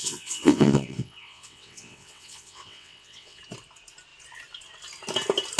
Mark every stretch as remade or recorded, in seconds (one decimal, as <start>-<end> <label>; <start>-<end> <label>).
0.0-3.4 remade; 3.4-5.6 recorded